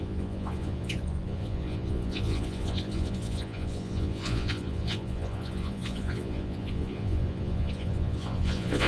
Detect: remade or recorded remade